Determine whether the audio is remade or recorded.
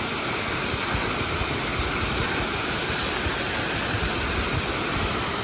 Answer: recorded